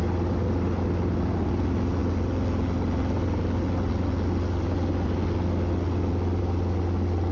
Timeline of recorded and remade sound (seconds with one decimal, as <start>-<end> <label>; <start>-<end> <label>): 0.0-7.3 recorded